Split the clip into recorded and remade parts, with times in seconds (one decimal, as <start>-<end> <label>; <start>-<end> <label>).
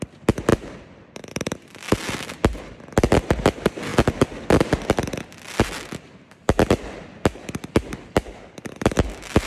0.0-0.5 recorded; 0.5-1.1 remade; 1.1-9.5 recorded